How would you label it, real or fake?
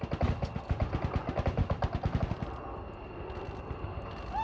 real